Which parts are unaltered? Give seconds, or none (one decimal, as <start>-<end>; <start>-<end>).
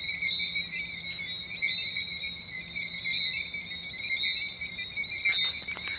0.0-6.0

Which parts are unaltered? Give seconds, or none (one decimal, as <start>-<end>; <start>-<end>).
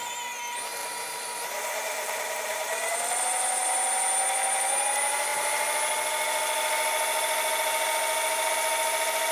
0.0-0.8; 3.2-9.3